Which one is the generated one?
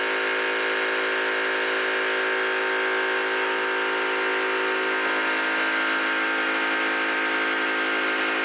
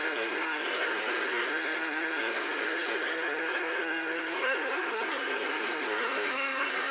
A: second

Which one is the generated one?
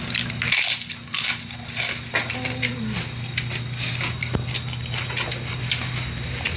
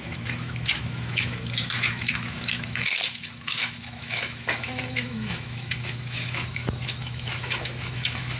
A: second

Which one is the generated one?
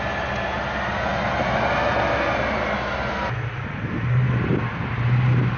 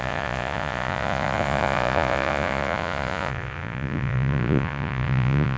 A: second